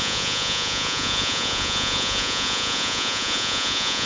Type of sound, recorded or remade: remade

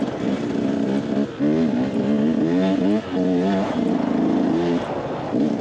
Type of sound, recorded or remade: recorded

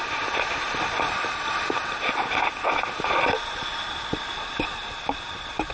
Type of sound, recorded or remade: recorded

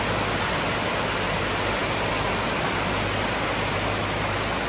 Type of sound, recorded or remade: recorded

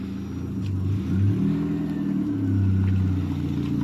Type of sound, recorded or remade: recorded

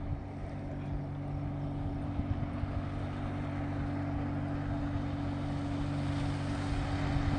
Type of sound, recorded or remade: recorded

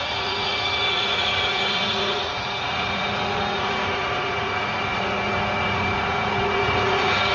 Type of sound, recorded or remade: remade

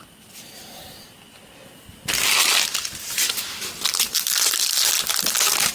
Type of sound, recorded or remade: recorded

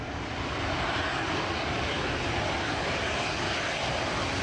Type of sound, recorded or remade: recorded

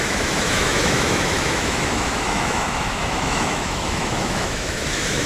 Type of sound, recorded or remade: remade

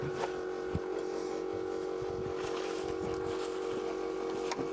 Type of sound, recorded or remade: recorded